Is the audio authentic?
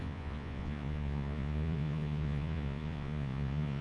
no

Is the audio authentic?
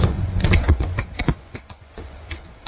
no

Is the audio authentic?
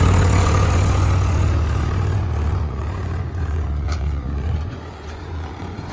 no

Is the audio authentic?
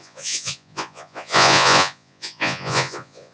no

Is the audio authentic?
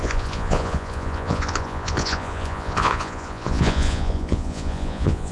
no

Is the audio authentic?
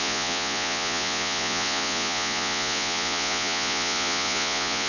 no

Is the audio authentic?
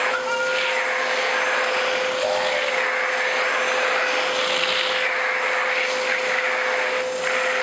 yes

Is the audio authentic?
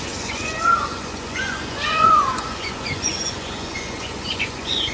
no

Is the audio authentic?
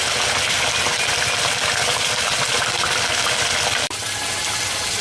yes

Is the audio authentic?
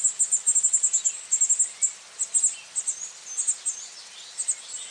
yes